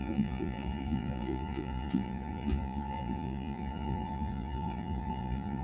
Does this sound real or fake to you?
fake